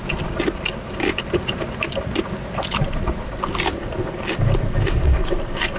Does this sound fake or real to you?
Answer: real